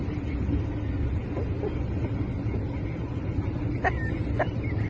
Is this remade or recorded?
recorded